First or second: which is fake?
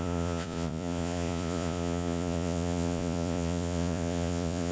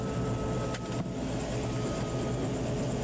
first